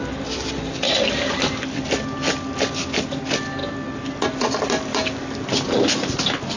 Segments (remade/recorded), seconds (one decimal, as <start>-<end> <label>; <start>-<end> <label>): 0.0-6.6 recorded